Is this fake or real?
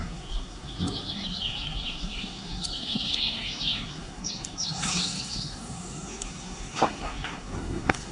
fake